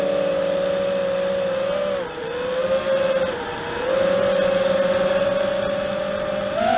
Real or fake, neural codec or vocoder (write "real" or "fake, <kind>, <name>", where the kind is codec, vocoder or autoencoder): real